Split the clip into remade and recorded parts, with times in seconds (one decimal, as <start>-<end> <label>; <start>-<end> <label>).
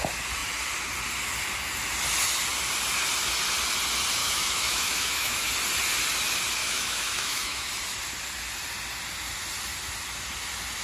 0.0-4.2 recorded; 4.2-5.5 remade; 5.5-6.6 recorded; 6.6-7.7 remade; 7.7-10.8 recorded